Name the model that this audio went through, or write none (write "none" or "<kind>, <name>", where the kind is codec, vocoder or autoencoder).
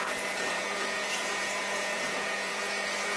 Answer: vocoder, Vocos